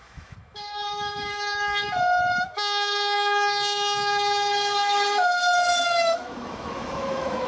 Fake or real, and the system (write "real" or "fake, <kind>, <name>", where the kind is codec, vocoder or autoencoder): fake, autoencoder, DAC-VAE